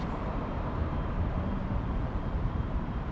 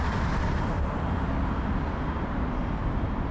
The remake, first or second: first